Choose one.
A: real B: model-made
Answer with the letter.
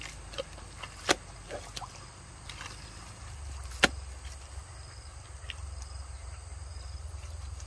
A